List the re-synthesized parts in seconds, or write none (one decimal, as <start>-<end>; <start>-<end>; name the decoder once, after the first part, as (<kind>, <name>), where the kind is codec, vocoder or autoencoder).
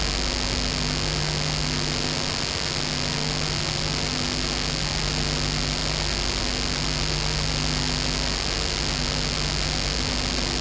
none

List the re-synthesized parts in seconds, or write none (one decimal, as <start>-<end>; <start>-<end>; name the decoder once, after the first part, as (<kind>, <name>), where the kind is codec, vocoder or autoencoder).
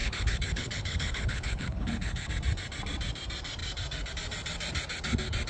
0.0-2.3 (codec, HILCodec)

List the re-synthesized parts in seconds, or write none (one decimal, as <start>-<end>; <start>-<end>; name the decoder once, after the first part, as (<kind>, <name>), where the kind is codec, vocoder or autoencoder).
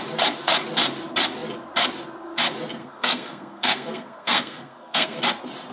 2.8-5.2 (codec, SNAC)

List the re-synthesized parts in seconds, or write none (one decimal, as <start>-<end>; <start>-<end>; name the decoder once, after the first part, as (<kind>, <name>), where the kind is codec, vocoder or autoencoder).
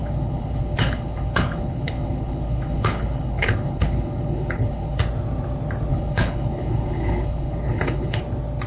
0.0-5.0 (codec, HILCodec); 5.9-8.2